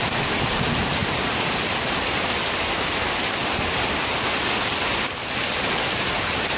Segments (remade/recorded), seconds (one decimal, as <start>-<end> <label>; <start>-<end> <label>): 0.0-1.0 recorded; 1.0-1.6 remade; 1.6-3.4 recorded; 3.4-4.0 remade; 4.0-6.6 recorded